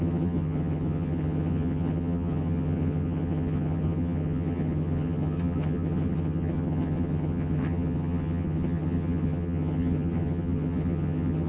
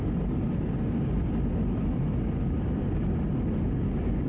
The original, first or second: second